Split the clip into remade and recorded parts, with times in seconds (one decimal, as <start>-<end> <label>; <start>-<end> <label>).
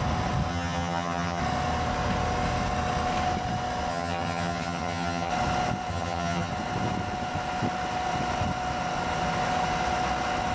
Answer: 0.0-0.5 recorded; 0.5-1.4 remade; 1.4-3.9 recorded; 3.9-5.3 remade; 5.3-5.9 recorded; 5.9-6.5 remade; 6.5-10.5 recorded